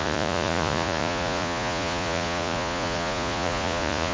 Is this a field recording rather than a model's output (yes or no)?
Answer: no